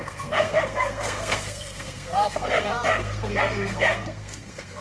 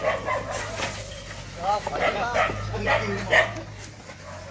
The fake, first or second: first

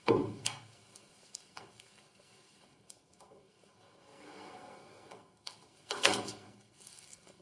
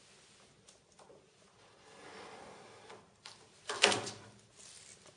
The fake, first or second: first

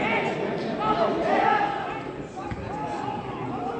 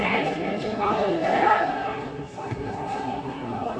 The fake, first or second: second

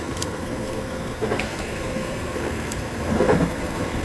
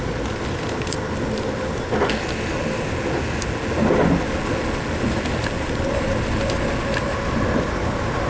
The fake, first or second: first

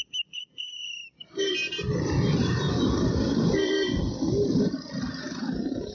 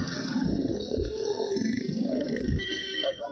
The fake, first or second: second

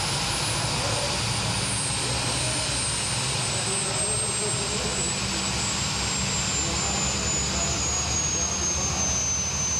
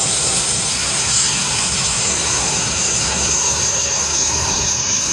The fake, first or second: second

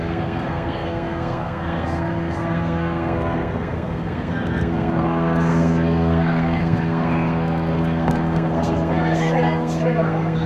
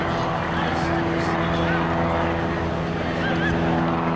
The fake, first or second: first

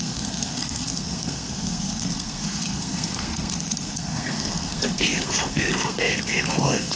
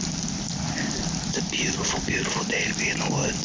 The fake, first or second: first